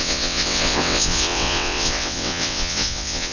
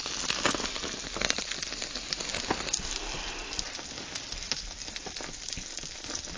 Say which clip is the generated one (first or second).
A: first